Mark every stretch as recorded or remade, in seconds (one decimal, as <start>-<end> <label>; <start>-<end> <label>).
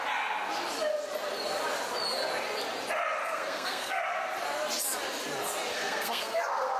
0.0-3.2 recorded; 3.2-4.0 remade; 4.0-5.7 recorded; 5.7-6.8 remade